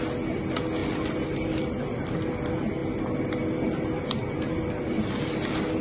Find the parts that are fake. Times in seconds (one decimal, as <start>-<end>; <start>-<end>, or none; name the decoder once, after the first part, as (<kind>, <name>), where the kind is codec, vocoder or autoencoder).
none

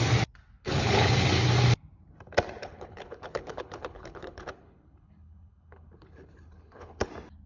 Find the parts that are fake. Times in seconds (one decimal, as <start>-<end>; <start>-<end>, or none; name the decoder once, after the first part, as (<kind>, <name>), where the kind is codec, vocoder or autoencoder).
0.6-1.1 (codec, HILCodec); 2.6-7.1

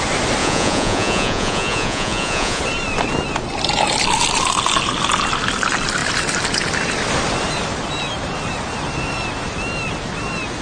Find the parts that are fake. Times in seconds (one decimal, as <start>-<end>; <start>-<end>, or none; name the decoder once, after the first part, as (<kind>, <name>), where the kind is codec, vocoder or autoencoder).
0.4-2.6 (vocoder, Vocos)

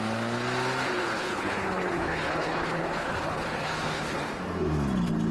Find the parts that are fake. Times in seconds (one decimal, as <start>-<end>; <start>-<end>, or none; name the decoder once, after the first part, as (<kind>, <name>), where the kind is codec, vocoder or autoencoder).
1.0-4.2 (codec, HILCodec)

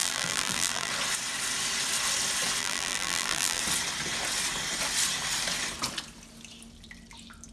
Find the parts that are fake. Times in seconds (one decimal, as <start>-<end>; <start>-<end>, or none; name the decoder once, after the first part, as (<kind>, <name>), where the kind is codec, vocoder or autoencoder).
0.0-0.9 (vocoder, BigVGAN v2); 2.6-3.6

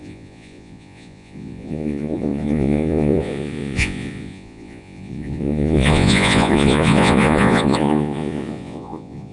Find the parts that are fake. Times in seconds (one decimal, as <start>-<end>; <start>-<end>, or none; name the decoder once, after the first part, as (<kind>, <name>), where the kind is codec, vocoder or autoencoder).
0.0-9.3 (vocoder, Vocos)

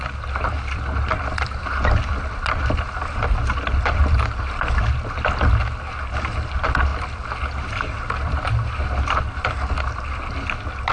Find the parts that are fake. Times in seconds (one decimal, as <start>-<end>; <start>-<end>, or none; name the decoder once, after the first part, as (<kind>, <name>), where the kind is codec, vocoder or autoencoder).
none

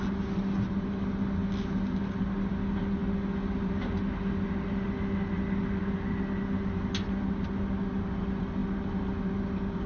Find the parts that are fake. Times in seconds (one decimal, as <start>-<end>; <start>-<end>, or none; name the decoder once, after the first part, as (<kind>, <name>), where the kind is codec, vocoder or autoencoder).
none